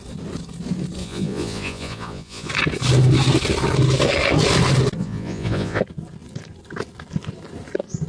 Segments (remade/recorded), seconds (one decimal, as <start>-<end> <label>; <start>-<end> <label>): 0.0-1.0 recorded; 1.0-2.5 remade; 2.5-5.0 recorded; 5.0-5.8 remade; 5.8-8.1 recorded